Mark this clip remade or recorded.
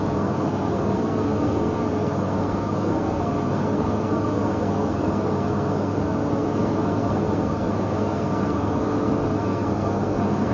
remade